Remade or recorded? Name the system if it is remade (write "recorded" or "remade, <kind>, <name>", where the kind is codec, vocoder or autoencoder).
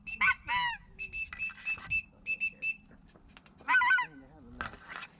recorded